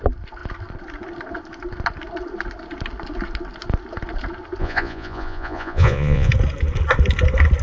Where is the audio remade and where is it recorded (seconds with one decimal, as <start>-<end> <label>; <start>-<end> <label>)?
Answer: 0.0-4.6 recorded; 4.6-6.3 remade; 6.3-7.6 recorded